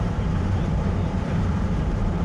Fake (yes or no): yes